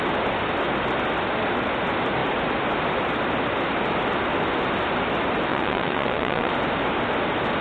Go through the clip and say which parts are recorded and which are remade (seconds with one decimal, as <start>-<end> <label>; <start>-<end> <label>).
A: 0.0-5.5 recorded; 5.5-6.5 remade; 6.5-7.6 recorded